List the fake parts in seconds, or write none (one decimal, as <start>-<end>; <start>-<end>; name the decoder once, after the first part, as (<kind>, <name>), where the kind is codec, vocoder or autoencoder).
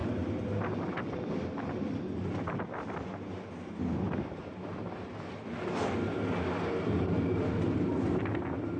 none